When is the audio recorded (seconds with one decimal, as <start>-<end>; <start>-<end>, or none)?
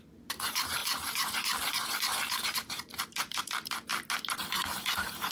3.9-4.7